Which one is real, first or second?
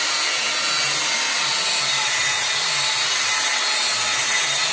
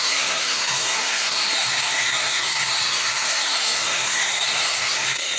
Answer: first